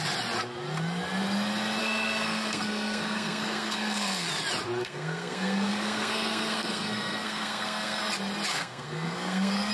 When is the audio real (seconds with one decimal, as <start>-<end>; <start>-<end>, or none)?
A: 0.0-1.8; 4.3-4.8; 8.0-8.5